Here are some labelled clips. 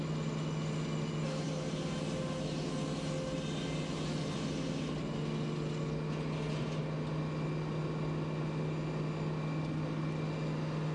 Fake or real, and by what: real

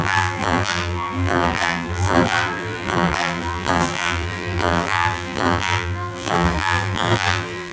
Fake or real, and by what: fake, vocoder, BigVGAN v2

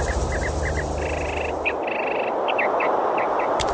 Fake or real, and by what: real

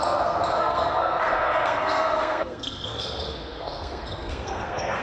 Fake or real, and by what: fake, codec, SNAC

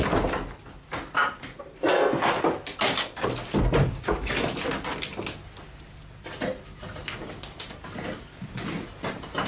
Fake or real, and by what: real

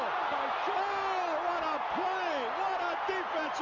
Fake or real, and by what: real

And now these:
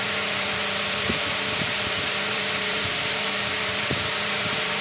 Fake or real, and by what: fake, vocoder, BigVGAN v2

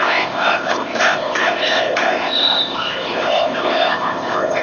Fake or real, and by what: fake, codec, ZipCodec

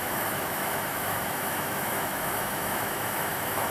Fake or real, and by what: fake, autoencoder, DAC-VAE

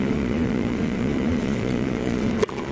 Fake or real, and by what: fake, vocoder, Vocos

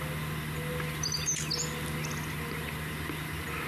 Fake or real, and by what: real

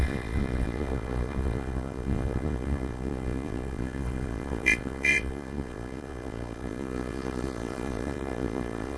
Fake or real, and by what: fake, vocoder, Vocos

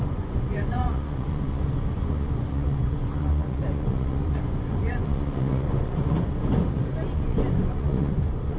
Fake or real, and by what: fake, vocoder, Vocos